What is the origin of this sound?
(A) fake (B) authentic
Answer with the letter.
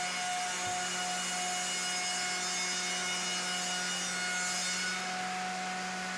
B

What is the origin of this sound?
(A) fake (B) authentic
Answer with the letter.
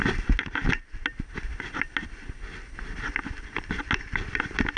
B